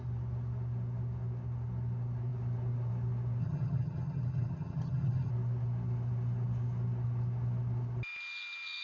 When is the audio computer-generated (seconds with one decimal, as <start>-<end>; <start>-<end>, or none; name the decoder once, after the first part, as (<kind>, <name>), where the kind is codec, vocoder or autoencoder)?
3.4-5.3 (vocoder, HiFi-GAN)